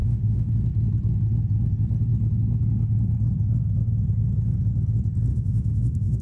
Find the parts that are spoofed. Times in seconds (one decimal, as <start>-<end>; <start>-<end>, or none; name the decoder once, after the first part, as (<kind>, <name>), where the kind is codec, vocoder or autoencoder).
0.0-0.5 (autoencoder, DAC-VAE); 5.3-6.2